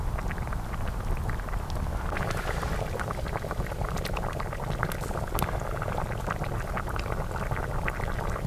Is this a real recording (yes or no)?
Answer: yes